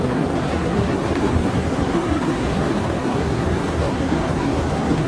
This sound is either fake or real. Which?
fake